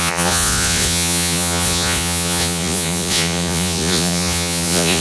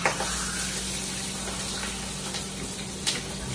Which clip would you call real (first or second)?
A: second